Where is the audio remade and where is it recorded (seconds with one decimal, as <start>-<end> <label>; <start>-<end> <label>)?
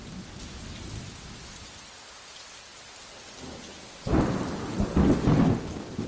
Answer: 0.0-6.1 recorded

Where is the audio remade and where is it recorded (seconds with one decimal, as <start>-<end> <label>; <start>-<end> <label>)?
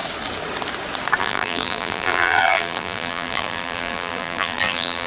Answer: 0.0-1.2 recorded; 1.2-5.1 remade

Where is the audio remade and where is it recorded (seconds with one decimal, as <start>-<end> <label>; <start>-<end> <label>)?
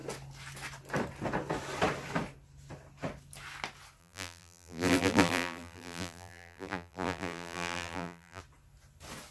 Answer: 0.0-4.0 recorded; 4.0-8.4 remade; 8.4-9.3 recorded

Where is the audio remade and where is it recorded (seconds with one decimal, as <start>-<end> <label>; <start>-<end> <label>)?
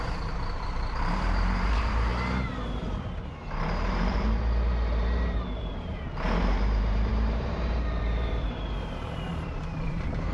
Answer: 0.0-2.1 remade; 2.1-3.2 recorded; 3.2-10.3 remade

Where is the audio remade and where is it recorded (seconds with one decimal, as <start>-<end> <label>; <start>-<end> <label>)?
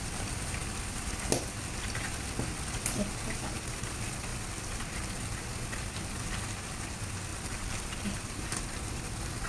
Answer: 0.0-7.3 recorded; 7.3-9.0 remade; 9.0-9.5 recorded